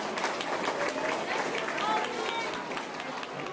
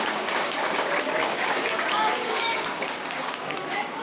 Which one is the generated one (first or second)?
second